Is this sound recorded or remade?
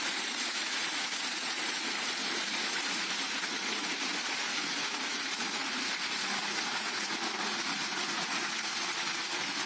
remade